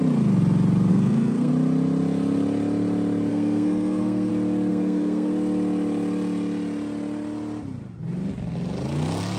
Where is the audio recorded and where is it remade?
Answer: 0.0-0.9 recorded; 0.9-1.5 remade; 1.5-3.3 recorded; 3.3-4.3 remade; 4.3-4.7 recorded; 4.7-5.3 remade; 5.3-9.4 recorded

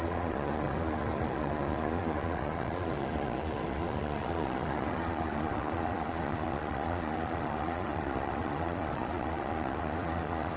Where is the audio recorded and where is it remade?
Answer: 0.0-10.6 remade

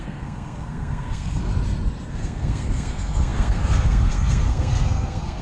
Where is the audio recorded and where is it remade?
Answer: 0.0-1.5 remade; 1.5-2.1 recorded; 2.1-5.4 remade

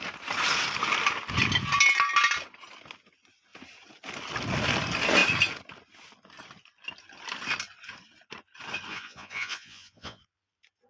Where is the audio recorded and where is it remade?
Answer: 0.0-8.9 recorded; 8.9-10.2 remade; 10.2-10.9 recorded

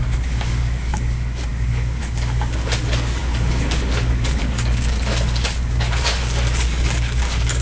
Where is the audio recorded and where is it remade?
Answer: 0.0-7.6 remade

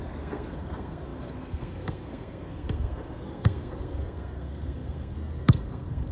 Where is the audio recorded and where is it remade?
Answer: 0.0-6.1 remade

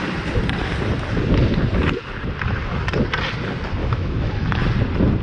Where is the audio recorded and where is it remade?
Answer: 0.0-3.8 recorded; 3.8-4.6 remade; 4.6-5.2 recorded